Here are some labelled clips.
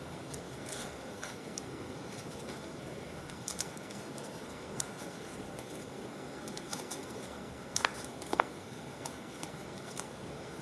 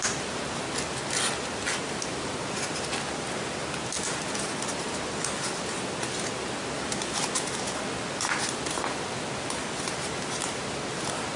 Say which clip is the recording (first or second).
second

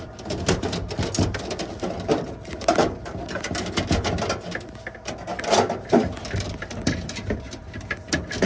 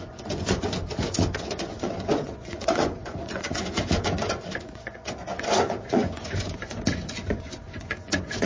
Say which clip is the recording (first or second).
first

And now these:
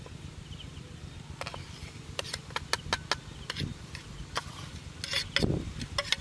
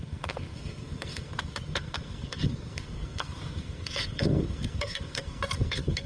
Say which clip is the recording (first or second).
first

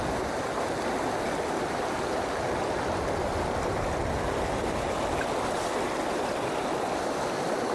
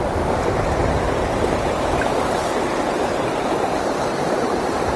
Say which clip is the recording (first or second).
first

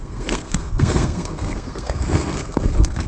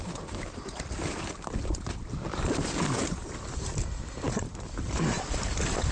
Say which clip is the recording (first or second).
second